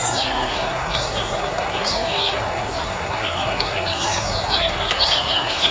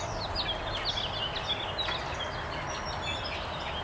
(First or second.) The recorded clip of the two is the second